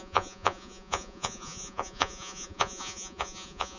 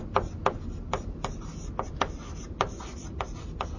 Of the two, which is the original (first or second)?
second